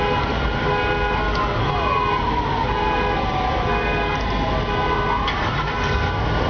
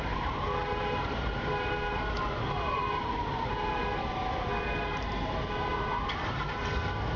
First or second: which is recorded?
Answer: first